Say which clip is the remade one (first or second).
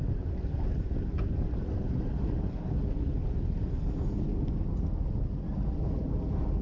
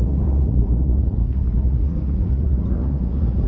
second